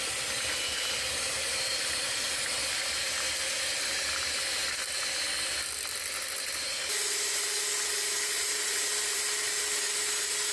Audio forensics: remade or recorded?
recorded